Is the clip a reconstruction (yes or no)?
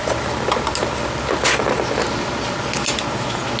no